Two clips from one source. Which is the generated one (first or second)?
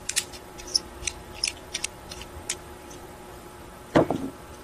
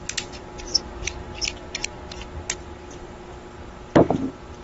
first